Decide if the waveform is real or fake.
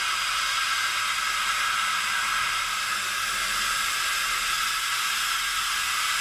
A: real